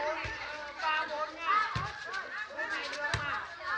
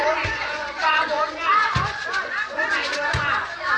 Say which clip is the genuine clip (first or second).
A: first